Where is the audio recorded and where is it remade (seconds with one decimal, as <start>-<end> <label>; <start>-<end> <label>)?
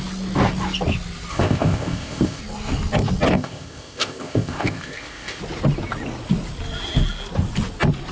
0.0-1.3 recorded; 1.3-2.4 remade; 2.4-3.3 recorded; 3.3-5.4 remade; 5.4-8.1 recorded